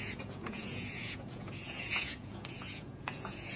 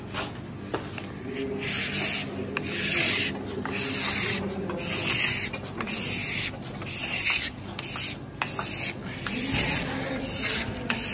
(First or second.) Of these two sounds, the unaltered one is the second